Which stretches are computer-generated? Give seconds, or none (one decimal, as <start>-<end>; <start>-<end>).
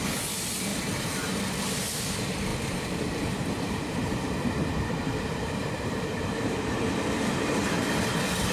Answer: 0.7-1.3; 2.5-7.5